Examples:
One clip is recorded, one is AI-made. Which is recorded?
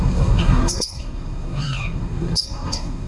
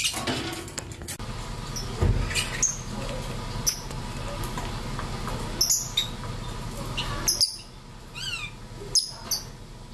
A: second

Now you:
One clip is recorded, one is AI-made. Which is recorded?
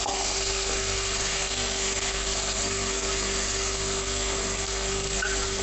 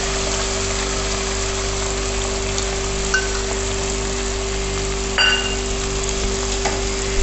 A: second